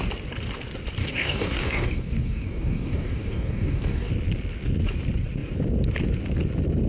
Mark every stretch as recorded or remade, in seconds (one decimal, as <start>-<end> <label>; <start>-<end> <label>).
0.0-1.0 recorded; 1.0-4.1 remade; 4.1-6.9 recorded